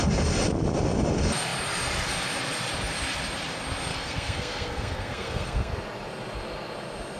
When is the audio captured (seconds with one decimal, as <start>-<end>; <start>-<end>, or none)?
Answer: 0.0-3.9; 5.7-7.2

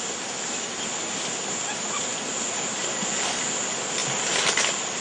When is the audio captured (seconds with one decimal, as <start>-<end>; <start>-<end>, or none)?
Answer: 0.0-5.0